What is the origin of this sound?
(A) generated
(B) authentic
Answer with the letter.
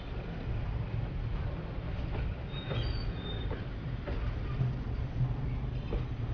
B